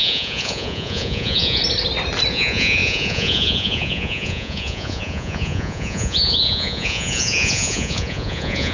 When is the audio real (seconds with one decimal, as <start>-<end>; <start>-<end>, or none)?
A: 1.6-2.3